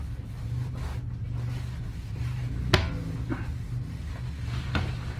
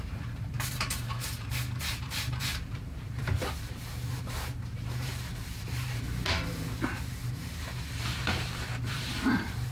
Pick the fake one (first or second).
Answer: second